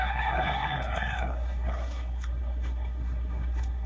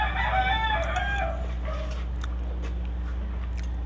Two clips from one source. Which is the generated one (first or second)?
first